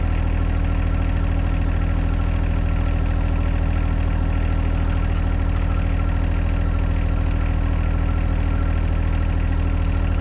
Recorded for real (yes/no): yes